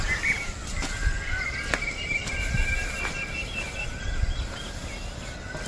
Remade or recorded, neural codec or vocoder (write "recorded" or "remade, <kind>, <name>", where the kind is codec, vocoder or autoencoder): recorded